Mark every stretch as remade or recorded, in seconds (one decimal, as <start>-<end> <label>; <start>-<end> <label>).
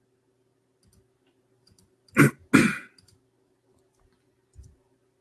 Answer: 0.0-5.2 recorded